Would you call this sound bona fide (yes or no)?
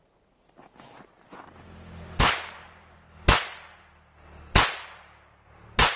yes